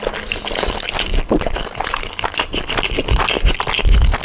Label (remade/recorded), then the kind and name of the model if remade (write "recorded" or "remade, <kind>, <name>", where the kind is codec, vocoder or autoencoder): recorded